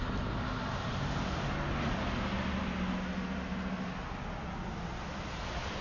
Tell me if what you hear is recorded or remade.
recorded